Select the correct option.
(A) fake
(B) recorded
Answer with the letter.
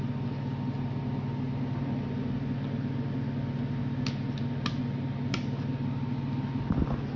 B